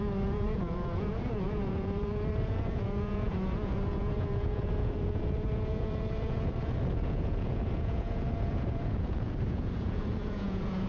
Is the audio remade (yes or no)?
yes